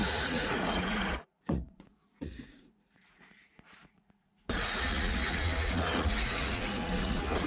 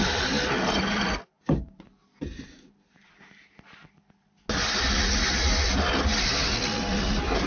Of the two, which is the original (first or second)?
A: second